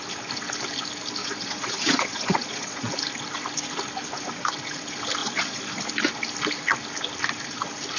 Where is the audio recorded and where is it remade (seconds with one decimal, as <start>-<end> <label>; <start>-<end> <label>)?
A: 0.0-1.2 recorded; 1.2-2.9 remade; 2.9-5.2 recorded; 5.2-5.8 remade; 5.8-8.0 recorded